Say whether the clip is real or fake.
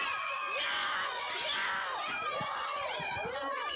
fake